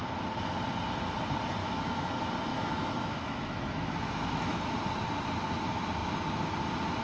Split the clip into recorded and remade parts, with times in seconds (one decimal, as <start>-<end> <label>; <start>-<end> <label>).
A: 0.0-1.6 recorded; 1.6-2.1 remade; 2.1-2.5 recorded; 2.5-4.7 remade; 4.7-7.0 recorded